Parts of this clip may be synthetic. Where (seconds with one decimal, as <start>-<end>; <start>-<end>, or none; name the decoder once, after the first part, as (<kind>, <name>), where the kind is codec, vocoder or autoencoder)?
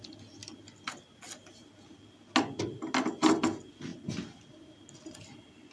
0.4-0.9 (vocoder, BigVGAN v2)